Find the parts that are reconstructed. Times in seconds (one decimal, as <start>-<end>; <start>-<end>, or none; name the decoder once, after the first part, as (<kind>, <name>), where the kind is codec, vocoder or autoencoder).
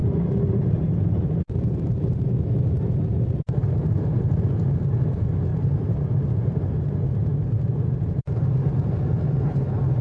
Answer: 0.0-1.8 (vocoder, BigVGAN v2); 5.5-8.9